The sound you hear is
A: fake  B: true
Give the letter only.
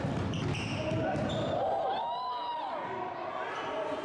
B